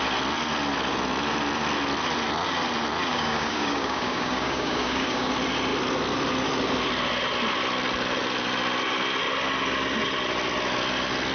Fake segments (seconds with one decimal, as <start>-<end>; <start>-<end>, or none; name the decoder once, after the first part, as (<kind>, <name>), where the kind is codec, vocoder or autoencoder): 3.1-5.3 (codec, DAC)